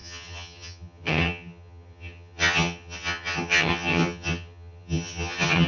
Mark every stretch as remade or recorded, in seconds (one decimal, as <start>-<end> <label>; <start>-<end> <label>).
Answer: 0.0-5.7 remade